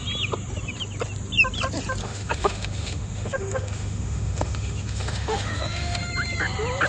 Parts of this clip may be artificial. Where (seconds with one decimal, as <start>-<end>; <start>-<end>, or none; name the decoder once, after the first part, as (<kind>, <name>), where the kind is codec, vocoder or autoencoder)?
2.0-6.1 (autoencoder, DAC-VAE)